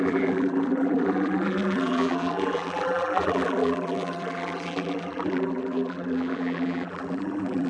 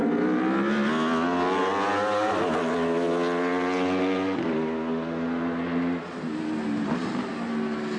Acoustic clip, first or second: second